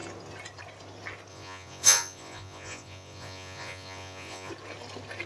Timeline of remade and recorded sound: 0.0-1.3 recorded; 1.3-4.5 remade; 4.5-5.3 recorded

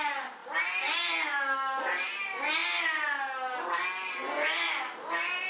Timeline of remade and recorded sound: 0.0-5.5 recorded